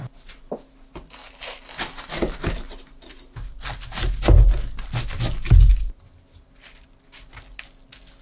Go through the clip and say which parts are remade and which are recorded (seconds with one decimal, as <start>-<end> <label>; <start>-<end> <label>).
0.0-8.2 recorded

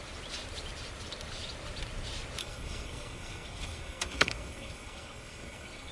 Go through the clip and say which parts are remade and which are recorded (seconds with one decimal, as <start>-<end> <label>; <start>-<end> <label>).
0.0-2.4 recorded; 2.4-5.9 remade

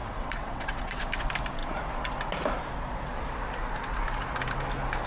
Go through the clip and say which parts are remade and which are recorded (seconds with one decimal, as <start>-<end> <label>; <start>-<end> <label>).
0.0-1.0 remade; 1.0-5.1 recorded